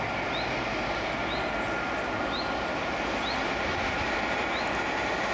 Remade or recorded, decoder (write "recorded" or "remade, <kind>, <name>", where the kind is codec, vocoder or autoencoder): recorded